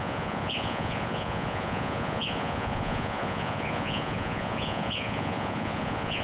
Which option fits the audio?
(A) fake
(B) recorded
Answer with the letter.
A